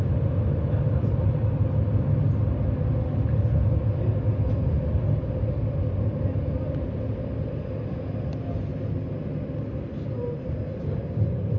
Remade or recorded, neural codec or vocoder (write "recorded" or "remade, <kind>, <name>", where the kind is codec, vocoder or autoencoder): recorded